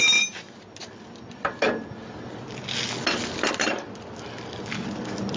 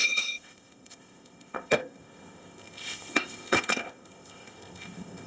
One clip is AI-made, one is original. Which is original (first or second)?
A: first